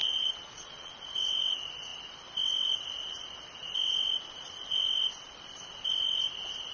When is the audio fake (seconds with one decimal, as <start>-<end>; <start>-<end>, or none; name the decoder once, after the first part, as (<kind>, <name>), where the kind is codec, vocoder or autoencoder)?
0.0-0.9 (vocoder, Vocos)